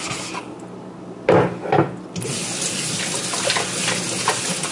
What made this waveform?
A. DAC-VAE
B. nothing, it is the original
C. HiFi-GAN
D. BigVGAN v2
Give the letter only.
B